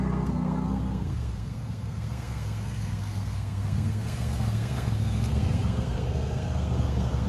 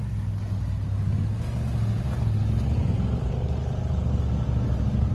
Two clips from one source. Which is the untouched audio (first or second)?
second